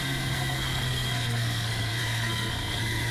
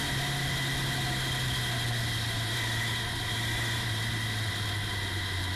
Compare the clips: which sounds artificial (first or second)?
first